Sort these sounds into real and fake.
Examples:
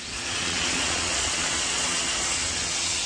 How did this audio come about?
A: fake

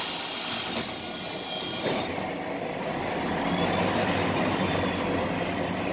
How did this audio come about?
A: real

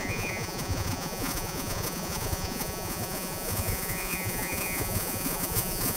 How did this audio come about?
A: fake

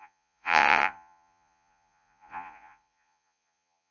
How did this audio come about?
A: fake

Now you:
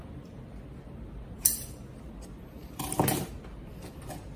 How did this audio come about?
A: real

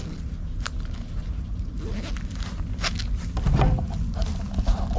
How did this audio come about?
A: real